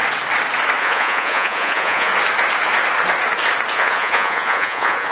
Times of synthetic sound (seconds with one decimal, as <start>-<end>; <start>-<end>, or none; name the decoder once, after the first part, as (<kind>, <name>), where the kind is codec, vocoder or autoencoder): 0.8-2.1 (vocoder, Vocos); 3.7-5.1